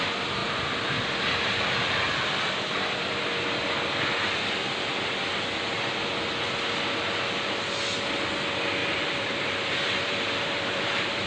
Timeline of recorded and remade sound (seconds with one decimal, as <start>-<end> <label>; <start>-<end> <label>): 0.0-8.8 recorded; 8.8-11.3 remade